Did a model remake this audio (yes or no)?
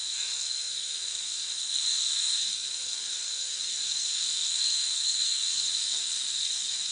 yes